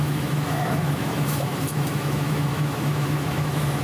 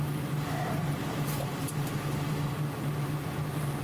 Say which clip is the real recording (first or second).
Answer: second